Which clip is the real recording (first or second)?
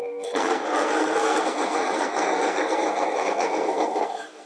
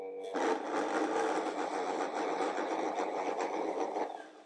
second